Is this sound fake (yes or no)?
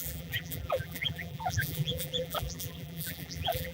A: yes